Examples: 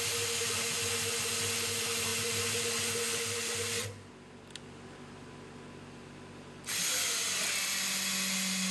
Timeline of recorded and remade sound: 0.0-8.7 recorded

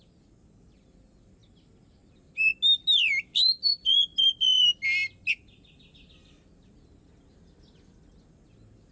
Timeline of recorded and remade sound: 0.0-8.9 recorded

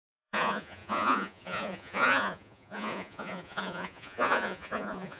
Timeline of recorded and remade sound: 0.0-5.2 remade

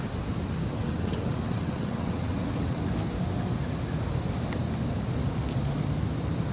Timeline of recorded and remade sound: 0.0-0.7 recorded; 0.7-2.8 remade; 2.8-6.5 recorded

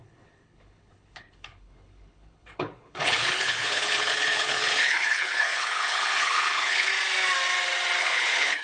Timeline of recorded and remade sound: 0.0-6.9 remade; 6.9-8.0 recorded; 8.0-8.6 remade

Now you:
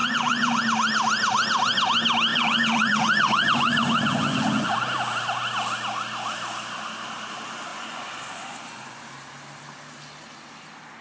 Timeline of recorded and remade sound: 0.0-0.6 remade; 0.6-2.3 recorded; 2.3-4.7 remade; 4.7-7.7 recorded; 7.7-9.0 remade; 9.0-11.0 recorded